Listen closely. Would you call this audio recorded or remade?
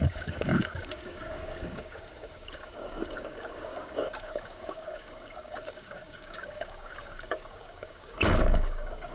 remade